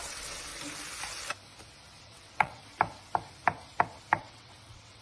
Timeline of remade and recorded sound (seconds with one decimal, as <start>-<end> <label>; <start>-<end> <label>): 0.0-0.5 remade; 0.5-2.0 recorded; 2.0-2.6 remade; 2.6-4.2 recorded; 4.2-5.0 remade